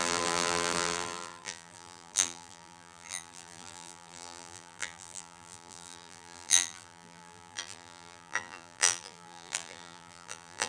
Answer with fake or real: fake